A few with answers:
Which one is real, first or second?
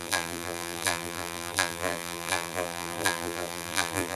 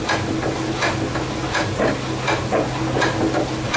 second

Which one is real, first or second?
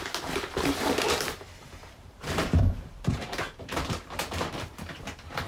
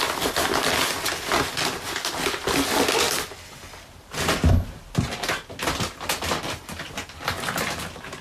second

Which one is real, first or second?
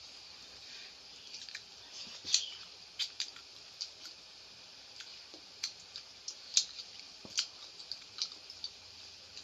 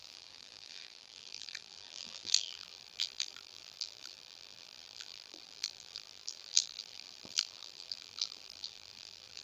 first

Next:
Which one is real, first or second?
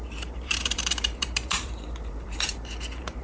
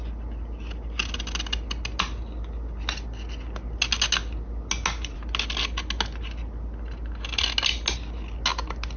second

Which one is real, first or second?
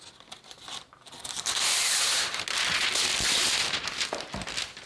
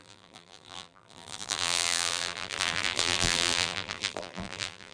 first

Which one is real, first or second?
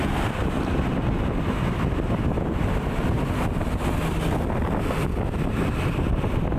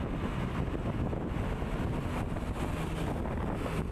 second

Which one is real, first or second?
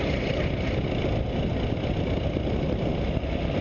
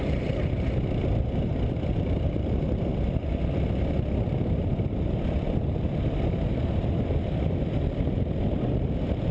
first